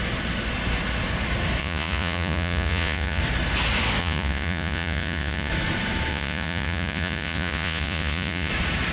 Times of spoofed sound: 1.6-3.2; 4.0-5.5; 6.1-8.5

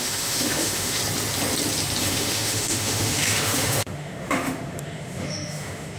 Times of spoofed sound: 0.0-1.0; 2.0-6.0

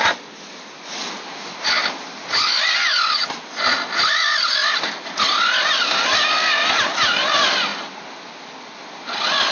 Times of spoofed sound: none

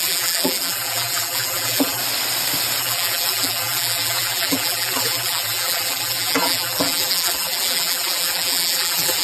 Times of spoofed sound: 0.0-2.0; 2.8-9.2

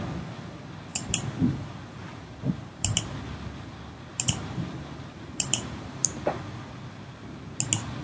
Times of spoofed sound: 0.9-3.0; 4.1-6.4

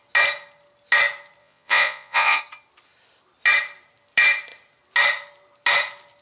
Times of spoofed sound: 1.4-2.4